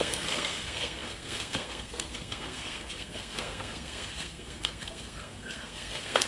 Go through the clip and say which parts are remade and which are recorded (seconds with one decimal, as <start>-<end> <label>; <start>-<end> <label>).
0.0-6.3 remade